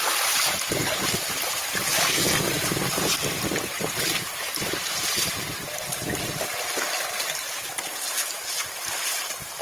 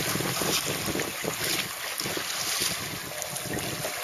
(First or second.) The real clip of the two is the second